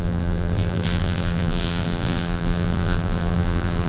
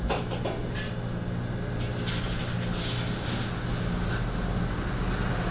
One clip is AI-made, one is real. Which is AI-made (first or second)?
first